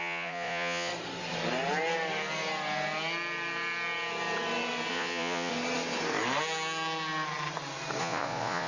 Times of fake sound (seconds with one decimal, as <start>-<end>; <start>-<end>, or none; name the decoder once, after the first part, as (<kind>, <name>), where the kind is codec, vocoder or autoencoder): 0.0-0.9 (vocoder, Vocos); 4.9-5.5; 8.0-8.7